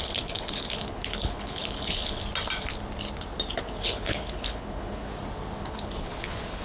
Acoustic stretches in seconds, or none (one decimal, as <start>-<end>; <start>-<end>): 2.2-3.6; 5.1-5.6